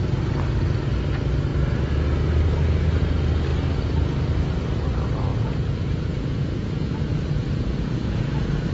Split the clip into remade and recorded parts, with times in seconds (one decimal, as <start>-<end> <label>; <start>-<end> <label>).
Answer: 0.0-5.3 recorded; 5.3-8.7 remade